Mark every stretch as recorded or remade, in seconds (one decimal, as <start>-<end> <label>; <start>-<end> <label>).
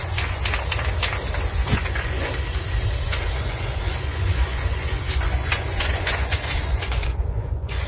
0.0-0.4 remade; 0.4-1.5 recorded; 1.5-2.3 remade; 2.3-3.0 recorded; 3.0-7.9 remade